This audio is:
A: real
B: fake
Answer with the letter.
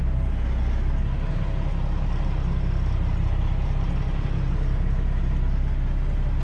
A